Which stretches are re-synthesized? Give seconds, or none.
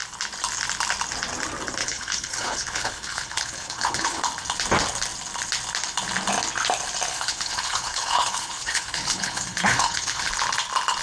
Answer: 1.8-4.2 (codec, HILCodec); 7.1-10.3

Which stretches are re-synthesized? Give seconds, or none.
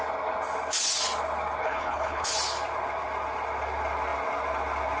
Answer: 1.6-2.3 (codec, HILCodec)